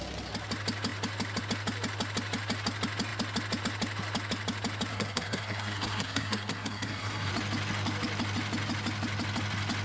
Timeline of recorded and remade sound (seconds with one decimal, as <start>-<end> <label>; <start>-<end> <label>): 0.0-4.9 recorded; 4.9-7.3 remade; 7.3-9.8 recorded